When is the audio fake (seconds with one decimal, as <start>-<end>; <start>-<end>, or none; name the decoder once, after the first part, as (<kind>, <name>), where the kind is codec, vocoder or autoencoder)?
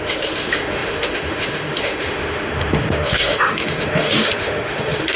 0.0-5.2 (autoencoder, DAC-VAE)